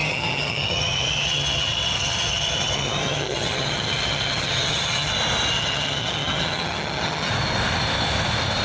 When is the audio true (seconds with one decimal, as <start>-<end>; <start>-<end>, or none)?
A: 5.1-5.5; 7.3-8.6